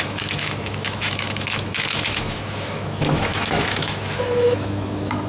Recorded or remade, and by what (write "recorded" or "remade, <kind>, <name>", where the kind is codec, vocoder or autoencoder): remade, autoencoder, DAC-VAE